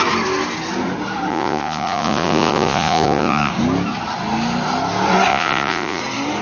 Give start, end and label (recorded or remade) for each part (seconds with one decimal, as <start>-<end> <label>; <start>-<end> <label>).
0.0-1.3 recorded; 1.3-3.5 remade; 3.5-5.3 recorded; 5.3-6.0 remade; 6.0-6.4 recorded